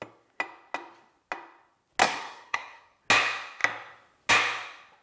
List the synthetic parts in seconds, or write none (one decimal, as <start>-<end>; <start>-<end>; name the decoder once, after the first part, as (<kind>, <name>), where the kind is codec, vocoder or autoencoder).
2.0-3.0 (codec, SNAC)

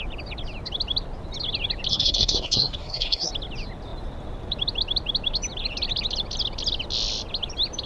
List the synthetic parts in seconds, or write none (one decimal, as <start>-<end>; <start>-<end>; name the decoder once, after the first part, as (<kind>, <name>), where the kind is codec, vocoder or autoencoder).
1.9-3.3 (codec, SNAC)

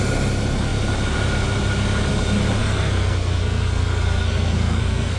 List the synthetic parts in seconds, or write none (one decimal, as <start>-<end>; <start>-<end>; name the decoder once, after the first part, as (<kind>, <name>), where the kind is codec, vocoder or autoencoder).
2.6-5.2 (codec, SNAC)

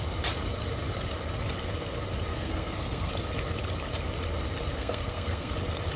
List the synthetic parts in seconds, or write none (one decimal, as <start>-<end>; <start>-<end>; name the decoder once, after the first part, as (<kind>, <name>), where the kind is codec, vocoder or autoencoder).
2.3-3.1 (codec, SNAC); 4.8-5.5

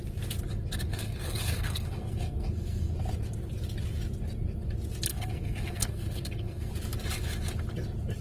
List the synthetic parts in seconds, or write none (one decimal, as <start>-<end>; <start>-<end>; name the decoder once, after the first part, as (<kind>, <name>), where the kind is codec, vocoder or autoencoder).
0.9-2.9 (codec, SNAC); 5.1-6.7